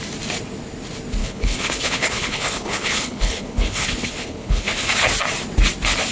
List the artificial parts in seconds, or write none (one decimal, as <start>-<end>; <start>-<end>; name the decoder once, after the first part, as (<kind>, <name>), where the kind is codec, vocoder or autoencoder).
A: 1.2-4.9 (codec, HILCodec)